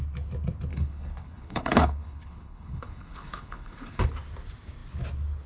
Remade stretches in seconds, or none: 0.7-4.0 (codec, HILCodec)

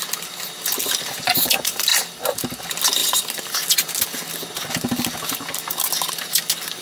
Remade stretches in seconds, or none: none

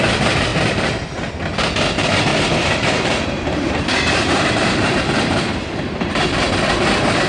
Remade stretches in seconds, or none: 0.5-1.1 (vocoder, BigVGAN v2); 2.3-6.5

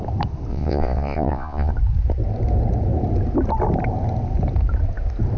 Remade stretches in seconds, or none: 0.5-1.7 (vocoder, Vocos)